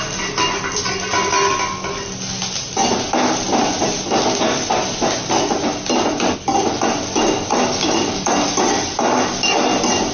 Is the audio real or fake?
real